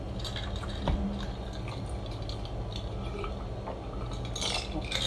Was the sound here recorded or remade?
recorded